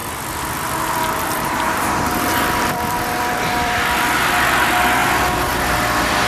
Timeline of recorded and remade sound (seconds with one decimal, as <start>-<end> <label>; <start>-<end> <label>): 0.0-3.8 remade; 3.8-6.3 recorded